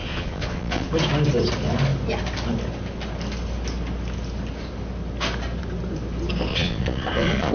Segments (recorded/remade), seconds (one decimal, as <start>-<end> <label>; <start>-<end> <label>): 0.0-0.9 remade; 0.9-6.5 recorded; 6.5-7.5 remade